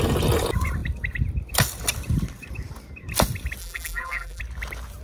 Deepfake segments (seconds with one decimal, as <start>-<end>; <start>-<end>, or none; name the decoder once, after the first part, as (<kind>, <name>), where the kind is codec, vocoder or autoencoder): 3.6-4.4 (vocoder, BigVGAN v2)